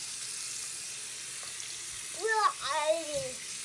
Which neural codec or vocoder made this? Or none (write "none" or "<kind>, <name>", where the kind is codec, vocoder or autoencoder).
none